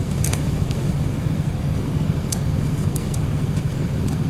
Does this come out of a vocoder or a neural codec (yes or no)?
yes